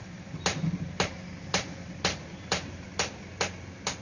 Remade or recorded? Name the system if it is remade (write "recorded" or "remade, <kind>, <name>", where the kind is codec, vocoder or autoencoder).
recorded